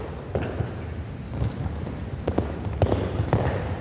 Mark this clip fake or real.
real